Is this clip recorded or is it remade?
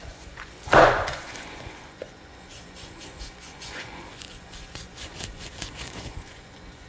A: remade